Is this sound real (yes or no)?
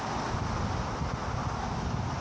yes